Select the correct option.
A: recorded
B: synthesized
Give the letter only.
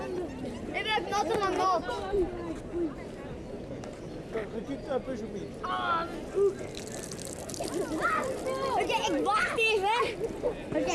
A